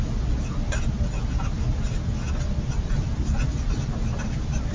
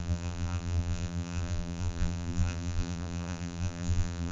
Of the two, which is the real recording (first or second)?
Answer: first